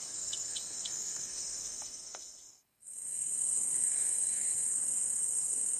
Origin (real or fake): fake